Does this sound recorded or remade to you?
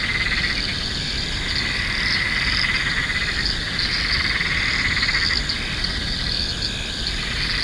recorded